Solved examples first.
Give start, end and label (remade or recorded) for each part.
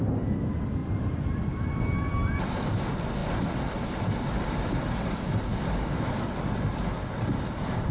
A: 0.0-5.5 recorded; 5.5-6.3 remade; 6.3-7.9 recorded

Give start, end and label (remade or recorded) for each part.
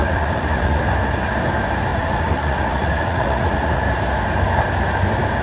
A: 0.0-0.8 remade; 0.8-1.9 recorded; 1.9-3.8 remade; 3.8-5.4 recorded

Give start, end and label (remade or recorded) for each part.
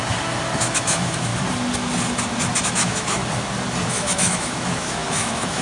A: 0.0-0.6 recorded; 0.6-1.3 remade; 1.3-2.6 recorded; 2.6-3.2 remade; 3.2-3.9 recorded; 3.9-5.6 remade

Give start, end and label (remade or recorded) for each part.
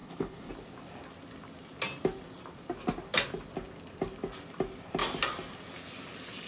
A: 0.0-0.5 remade; 0.5-6.5 recorded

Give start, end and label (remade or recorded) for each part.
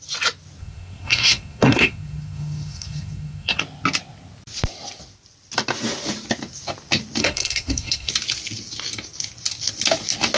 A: 0.0-0.6 recorded; 0.6-3.6 remade; 3.6-7.2 recorded; 7.2-8.1 remade; 8.1-10.4 recorded